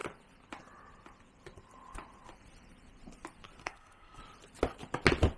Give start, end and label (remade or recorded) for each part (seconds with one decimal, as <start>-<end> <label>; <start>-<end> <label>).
0.0-3.6 recorded; 3.6-4.2 remade; 4.2-5.4 recorded